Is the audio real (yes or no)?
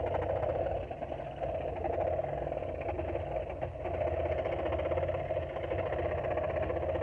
yes